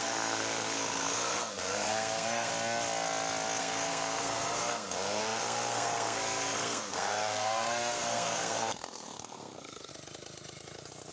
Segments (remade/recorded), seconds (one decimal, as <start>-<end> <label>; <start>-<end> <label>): 0.0-2.5 remade; 2.5-3.6 recorded; 3.6-9.9 remade; 9.9-11.1 recorded